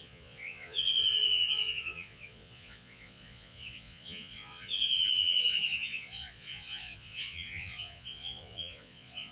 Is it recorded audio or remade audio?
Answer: remade